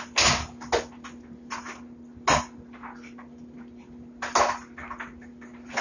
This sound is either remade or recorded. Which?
recorded